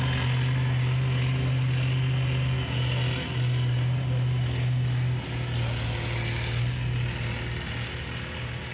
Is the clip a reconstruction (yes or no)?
no